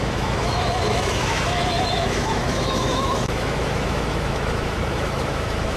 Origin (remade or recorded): remade